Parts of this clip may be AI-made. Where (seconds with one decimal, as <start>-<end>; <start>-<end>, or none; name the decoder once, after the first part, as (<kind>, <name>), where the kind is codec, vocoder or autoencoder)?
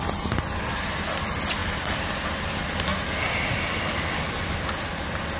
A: none